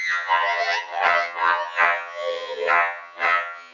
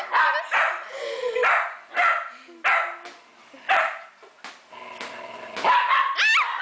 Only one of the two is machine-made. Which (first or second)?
first